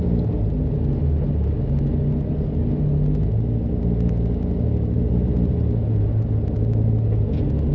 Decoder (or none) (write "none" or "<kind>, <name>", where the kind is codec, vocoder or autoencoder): none